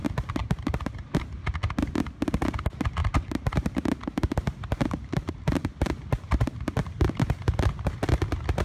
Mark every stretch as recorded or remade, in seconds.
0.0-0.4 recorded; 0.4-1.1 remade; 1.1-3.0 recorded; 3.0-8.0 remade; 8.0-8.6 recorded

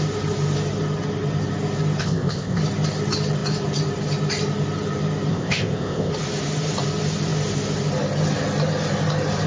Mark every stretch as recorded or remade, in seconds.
0.0-2.0 recorded; 2.0-2.6 remade; 2.6-5.3 recorded; 5.3-6.1 remade; 6.1-9.5 recorded